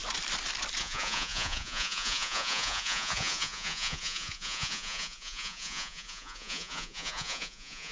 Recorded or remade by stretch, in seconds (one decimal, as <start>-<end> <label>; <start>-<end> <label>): 0.0-0.8 recorded; 0.8-7.9 remade